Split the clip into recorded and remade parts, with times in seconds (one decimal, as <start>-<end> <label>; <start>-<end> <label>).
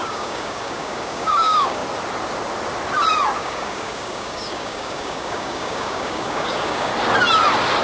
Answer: 0.0-1.8 remade; 1.8-3.4 recorded; 3.4-6.9 remade; 6.9-7.8 recorded